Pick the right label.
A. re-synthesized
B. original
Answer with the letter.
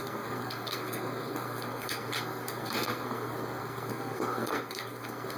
A